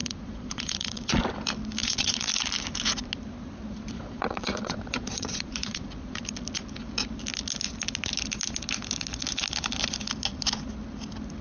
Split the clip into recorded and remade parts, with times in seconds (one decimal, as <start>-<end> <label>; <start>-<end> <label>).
0.0-1.2 remade; 1.2-1.8 recorded; 1.8-2.3 remade; 2.3-3.9 recorded; 3.9-6.2 remade; 6.2-11.4 recorded